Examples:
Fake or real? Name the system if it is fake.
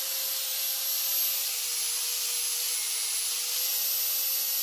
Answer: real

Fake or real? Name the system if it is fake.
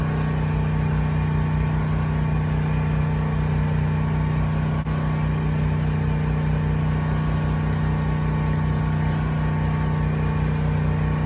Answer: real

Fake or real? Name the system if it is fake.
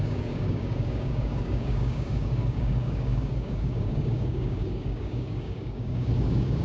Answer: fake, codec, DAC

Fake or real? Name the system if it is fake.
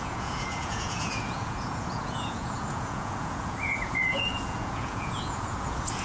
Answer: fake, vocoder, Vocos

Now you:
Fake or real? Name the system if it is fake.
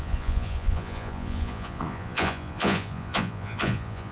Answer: fake, vocoder, Vocos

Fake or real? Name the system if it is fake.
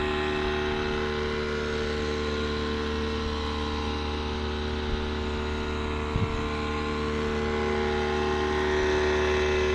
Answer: real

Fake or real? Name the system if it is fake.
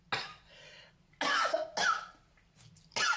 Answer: real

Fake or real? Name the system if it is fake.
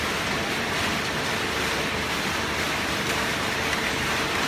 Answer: fake, vocoder, BigVGAN v2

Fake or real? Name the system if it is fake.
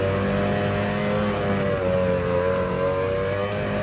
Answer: real